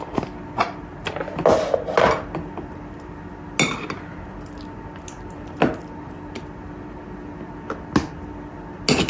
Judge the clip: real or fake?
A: real